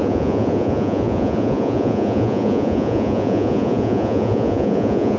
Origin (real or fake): fake